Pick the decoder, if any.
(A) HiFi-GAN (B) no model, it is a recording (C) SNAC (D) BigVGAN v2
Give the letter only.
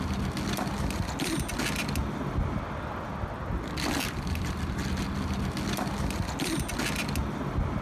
B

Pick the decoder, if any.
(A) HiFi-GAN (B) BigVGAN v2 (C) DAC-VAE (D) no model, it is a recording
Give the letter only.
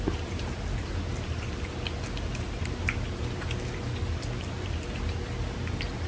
D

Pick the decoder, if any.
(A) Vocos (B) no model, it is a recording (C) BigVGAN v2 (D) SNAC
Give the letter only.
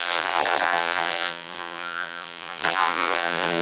C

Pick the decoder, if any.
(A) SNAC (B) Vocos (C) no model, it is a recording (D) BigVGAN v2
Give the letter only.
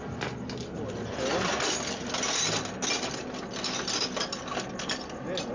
C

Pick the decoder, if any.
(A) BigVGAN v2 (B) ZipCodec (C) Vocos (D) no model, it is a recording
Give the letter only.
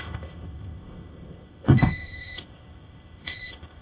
B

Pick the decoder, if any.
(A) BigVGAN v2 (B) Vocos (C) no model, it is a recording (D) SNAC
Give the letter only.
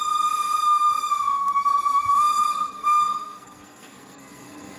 D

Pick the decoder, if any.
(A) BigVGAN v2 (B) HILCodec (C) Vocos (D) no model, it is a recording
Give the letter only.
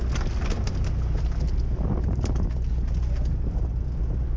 D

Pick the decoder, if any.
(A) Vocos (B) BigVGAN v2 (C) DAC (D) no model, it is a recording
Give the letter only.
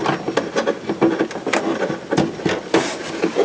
D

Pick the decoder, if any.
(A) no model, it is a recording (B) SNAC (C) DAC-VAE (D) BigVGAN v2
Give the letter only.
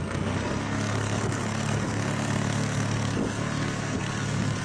B